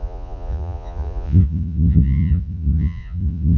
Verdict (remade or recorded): remade